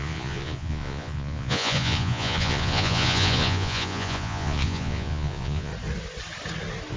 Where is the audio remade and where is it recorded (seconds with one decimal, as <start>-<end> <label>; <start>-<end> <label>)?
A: 0.0-5.7 remade; 5.7-7.0 recorded